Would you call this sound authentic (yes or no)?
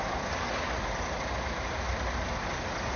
yes